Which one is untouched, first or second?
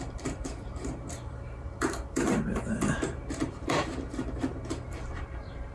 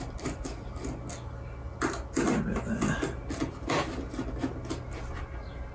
second